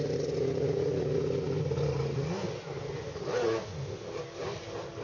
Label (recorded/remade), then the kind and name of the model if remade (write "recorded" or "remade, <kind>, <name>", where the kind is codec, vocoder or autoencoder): recorded